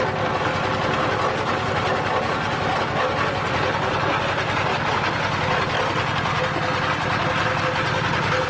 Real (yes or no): yes